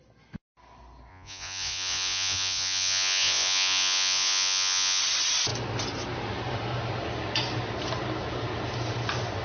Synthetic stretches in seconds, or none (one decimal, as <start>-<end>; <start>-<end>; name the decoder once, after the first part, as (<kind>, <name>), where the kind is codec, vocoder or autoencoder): 1.1-5.0 (vocoder, Vocos)